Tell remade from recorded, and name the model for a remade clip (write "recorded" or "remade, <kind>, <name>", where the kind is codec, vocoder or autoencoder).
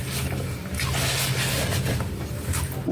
recorded